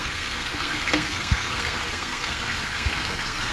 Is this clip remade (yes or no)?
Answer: yes